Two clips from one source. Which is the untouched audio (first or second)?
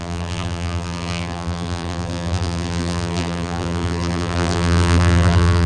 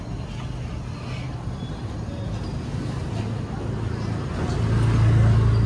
second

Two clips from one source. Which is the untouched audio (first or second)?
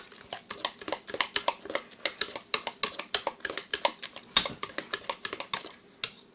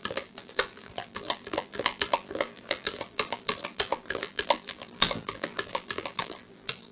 first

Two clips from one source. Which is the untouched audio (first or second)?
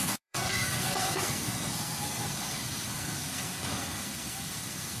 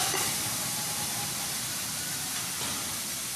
second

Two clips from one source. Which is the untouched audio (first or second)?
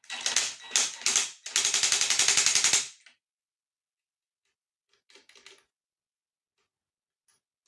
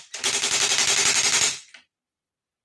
first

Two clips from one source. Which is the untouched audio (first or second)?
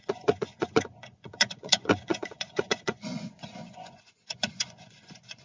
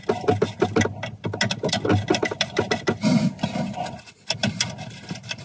second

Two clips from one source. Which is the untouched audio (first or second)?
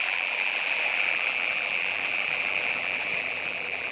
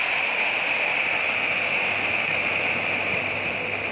second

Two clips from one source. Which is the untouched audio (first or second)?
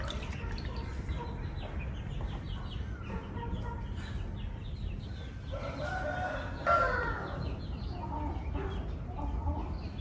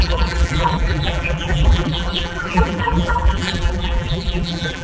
first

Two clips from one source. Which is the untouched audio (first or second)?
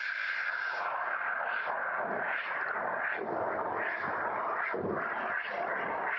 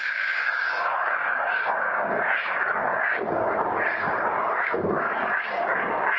first